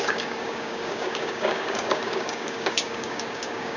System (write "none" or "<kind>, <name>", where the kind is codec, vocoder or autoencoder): codec, DAC